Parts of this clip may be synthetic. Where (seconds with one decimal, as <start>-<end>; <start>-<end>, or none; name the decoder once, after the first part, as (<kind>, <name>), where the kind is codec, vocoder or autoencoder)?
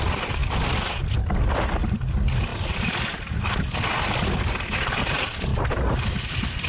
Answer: none